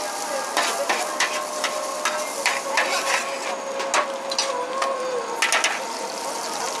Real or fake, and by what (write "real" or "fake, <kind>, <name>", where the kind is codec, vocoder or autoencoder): real